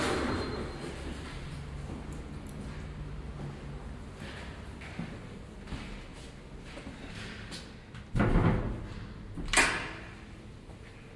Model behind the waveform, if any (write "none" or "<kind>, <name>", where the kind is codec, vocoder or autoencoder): none